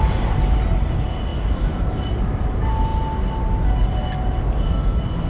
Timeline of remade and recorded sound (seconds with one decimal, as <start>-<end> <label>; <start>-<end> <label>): 0.0-5.3 recorded